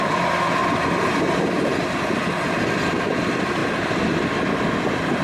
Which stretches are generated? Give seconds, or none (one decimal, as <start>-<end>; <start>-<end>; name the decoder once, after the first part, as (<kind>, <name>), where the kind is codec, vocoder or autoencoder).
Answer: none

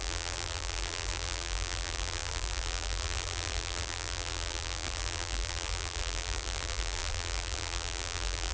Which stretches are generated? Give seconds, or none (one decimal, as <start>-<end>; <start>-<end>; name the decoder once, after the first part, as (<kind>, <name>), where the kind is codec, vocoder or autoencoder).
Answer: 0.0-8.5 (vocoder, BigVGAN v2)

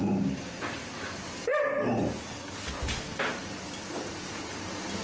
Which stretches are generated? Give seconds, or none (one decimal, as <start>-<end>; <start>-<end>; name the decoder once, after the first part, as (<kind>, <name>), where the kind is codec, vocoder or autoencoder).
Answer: none

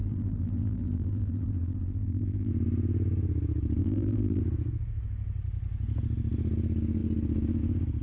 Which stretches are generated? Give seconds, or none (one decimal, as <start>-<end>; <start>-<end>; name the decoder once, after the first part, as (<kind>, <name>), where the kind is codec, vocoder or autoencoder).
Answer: 0.0-2.5 (vocoder, BigVGAN v2); 3.8-4.4